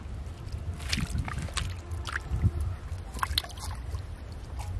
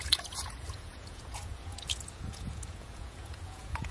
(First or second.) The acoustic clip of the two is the first